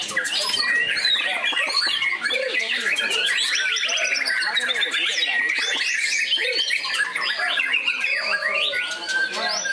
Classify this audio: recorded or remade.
remade